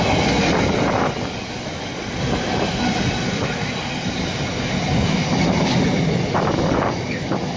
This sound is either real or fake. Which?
real